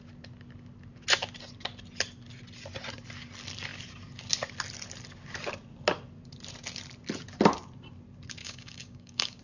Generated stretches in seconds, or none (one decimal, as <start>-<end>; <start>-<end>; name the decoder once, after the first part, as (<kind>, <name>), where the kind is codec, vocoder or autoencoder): 8.4-9.4 (codec, DAC)